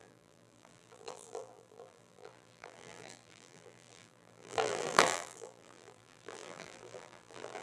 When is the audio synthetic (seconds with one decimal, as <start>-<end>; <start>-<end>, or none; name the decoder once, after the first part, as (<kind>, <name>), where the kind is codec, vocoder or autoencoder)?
0.0-7.6 (vocoder, BigVGAN v2)